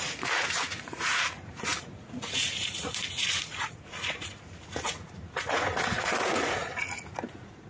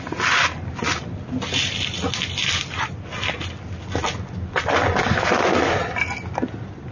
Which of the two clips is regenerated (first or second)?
first